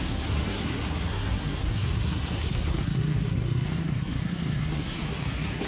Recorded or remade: remade